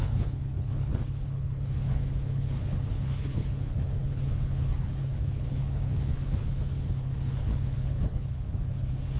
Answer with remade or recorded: remade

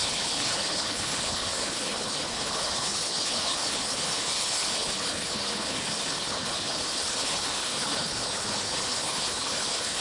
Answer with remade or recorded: remade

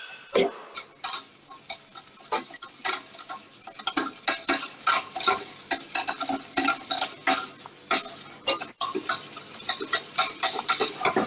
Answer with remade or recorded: recorded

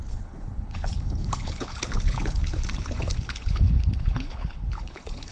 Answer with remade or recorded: remade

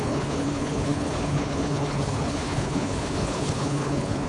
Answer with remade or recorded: remade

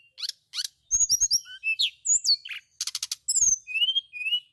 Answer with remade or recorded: recorded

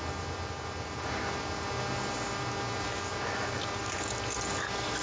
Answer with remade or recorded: recorded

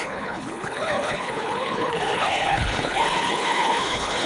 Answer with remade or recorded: remade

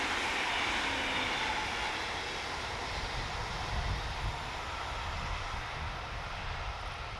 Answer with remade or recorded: recorded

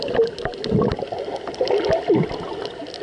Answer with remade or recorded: recorded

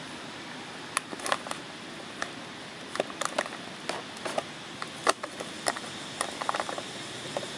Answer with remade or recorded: recorded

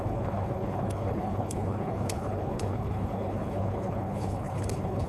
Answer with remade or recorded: remade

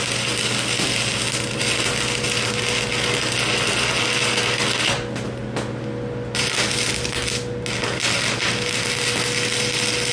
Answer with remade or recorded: recorded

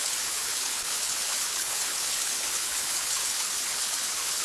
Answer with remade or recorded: remade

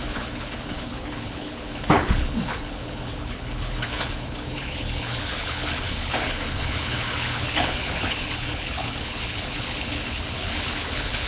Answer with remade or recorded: remade